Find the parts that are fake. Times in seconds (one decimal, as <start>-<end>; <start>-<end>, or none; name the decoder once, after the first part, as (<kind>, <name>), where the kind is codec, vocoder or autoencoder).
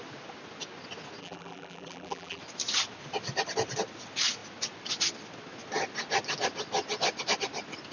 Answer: 1.2-2.4 (vocoder, BigVGAN v2)